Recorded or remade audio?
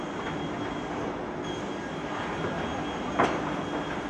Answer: recorded